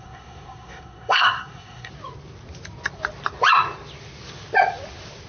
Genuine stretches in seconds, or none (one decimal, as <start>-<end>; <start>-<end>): 1.9-5.3